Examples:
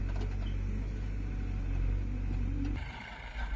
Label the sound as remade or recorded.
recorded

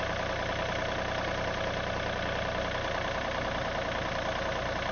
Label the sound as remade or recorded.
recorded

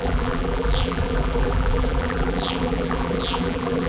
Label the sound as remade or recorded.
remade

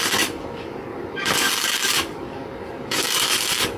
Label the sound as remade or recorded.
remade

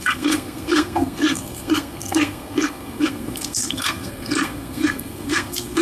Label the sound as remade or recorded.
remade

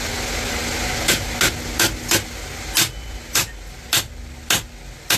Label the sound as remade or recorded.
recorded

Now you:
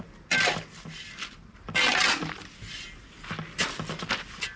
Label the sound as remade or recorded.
recorded